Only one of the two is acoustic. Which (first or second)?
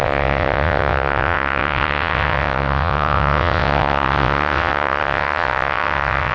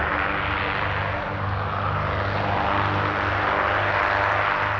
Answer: second